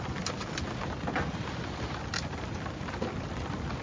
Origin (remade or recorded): recorded